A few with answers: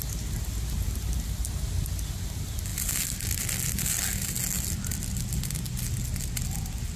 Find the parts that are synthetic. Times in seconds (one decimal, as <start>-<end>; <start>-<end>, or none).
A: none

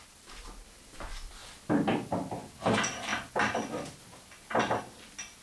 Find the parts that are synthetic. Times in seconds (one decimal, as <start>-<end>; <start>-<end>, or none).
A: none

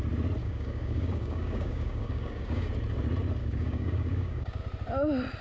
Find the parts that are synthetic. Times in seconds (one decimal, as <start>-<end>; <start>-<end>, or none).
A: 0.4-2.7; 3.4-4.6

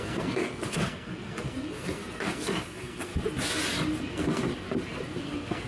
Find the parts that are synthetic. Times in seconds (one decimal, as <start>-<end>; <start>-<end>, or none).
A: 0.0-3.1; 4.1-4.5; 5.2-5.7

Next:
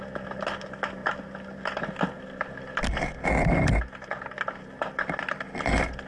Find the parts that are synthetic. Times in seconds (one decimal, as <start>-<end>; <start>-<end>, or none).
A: none

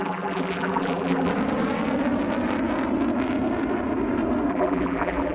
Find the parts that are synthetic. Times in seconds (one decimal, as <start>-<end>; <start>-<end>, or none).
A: 0.0-1.3; 4.5-5.3